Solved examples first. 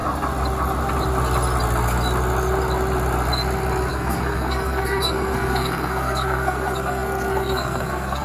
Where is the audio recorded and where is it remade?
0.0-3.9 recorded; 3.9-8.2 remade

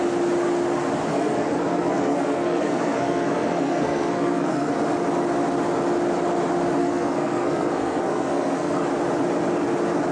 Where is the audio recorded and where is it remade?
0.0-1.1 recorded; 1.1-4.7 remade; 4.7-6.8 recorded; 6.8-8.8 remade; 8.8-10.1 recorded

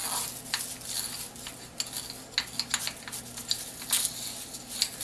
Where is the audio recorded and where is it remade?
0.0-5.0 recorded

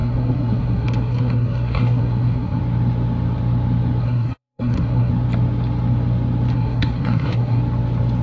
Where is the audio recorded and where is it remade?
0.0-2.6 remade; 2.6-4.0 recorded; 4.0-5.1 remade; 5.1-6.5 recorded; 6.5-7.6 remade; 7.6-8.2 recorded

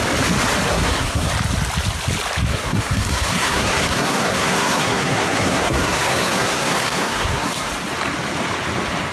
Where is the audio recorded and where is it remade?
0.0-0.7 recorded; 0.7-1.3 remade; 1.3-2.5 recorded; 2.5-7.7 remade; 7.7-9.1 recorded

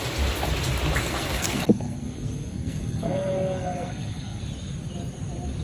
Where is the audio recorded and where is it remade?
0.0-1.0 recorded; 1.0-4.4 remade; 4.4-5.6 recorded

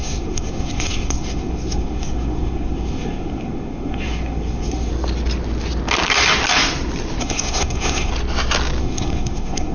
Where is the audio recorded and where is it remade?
0.0-4.9 remade; 4.9-7.2 recorded; 7.2-8.1 remade; 8.1-8.8 recorded; 8.8-9.7 remade